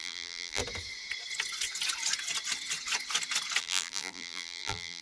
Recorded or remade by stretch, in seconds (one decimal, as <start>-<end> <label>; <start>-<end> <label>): 0.0-0.6 remade; 0.6-3.6 recorded; 3.6-5.0 remade